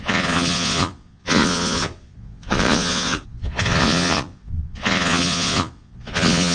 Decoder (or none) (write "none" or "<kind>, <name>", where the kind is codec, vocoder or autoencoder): vocoder, Vocos